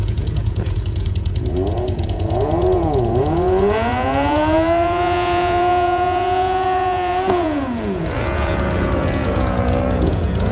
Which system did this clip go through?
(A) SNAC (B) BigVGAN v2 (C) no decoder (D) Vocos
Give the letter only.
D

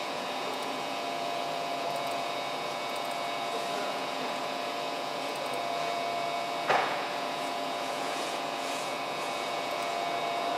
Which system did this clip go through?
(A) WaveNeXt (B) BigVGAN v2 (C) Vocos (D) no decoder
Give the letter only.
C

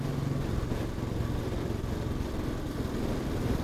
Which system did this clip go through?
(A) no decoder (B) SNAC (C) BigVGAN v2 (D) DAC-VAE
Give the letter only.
A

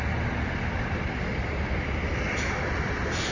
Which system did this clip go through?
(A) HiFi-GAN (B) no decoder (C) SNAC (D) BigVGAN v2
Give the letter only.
B